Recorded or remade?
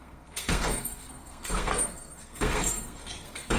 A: remade